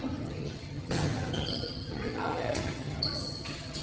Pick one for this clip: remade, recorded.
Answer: remade